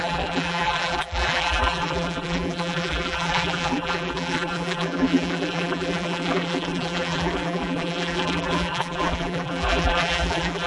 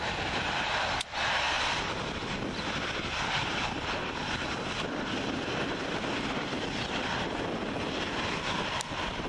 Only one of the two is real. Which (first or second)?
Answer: second